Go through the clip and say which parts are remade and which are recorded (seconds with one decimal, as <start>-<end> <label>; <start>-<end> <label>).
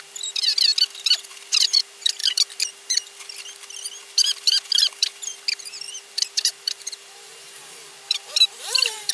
0.0-9.1 remade